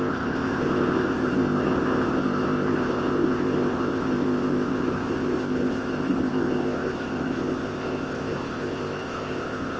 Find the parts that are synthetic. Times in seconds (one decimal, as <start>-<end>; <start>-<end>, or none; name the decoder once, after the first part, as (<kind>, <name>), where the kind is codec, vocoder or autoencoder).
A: 0.0-9.8 (codec, ZipCodec)